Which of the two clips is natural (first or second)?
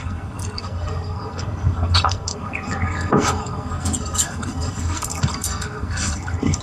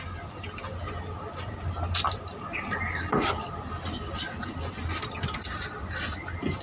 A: second